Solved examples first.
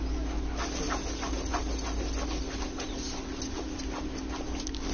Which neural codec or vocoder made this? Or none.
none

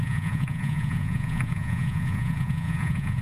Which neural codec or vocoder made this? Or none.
vocoder, Vocos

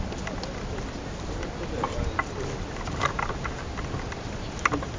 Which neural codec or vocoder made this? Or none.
none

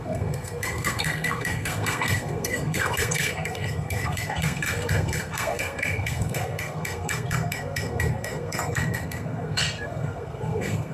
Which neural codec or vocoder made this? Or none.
codec, SNAC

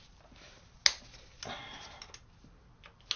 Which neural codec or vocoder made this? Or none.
none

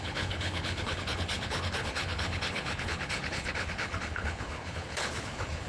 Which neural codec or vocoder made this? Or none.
codec, HILCodec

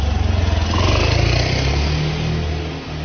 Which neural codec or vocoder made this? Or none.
none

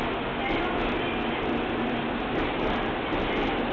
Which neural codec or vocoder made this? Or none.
none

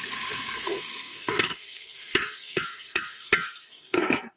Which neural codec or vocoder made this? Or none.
codec, SNAC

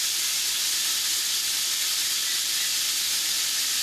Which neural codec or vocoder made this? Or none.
none